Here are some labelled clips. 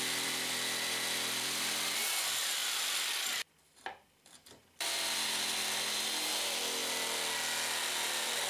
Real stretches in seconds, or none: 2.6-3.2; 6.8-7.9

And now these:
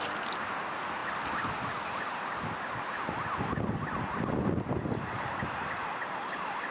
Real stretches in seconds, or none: 0.0-6.7

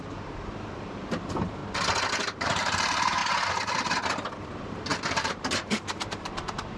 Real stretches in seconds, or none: 1.6-2.1; 3.2-4.5

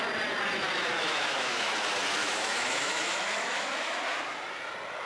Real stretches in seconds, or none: 0.0-0.9; 1.7-2.2; 4.0-5.1

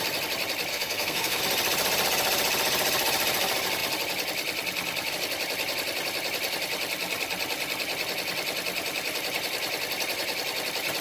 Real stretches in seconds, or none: 0.0-0.7; 1.4-11.0

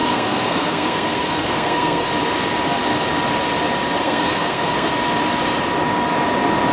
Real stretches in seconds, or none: 2.1-4.0; 4.9-6.7